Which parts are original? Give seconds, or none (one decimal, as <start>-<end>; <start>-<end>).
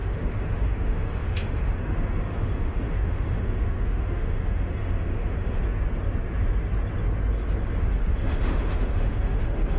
5.6-7.8